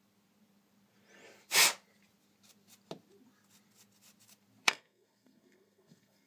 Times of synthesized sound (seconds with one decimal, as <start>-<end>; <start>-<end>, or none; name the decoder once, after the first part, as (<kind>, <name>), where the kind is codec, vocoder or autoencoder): 4.6-6.3 (codec, SNAC)